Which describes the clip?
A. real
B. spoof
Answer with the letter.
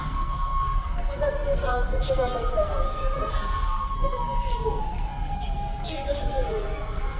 B